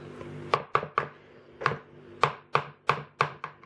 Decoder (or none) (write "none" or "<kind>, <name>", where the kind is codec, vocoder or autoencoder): none